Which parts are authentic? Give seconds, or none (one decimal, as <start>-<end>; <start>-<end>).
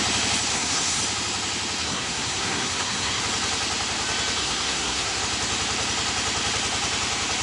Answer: 0.0-0.5; 1.0-1.8; 3.2-4.4; 5.2-7.4